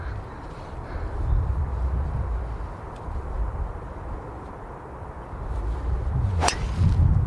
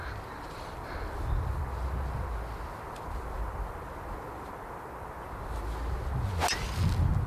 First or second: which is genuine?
second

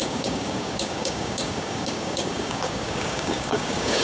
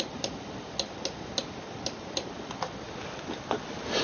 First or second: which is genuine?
second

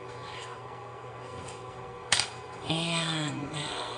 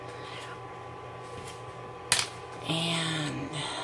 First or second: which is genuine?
second